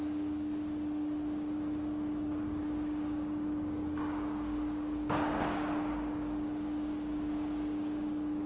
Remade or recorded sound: remade